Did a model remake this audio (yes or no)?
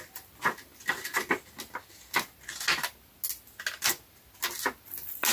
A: no